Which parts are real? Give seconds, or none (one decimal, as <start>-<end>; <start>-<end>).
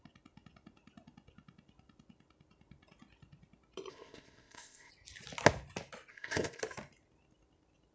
0.0-3.9; 4.9-6.1; 6.6-7.9